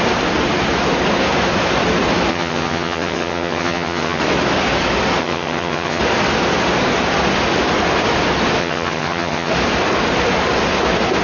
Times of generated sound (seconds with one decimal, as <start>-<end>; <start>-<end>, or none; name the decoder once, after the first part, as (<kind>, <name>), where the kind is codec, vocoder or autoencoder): 2.3-4.2 (vocoder, HiFi-GAN); 5.2-6.0; 8.6-9.5